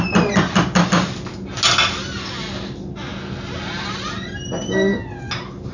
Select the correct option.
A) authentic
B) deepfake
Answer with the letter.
A